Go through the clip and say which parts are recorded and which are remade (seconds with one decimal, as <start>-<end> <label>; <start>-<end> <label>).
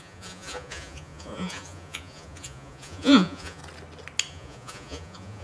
0.0-3.6 remade; 3.6-4.3 recorded; 4.3-5.4 remade